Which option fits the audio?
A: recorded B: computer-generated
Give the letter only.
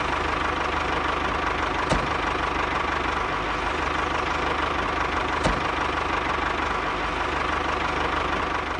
A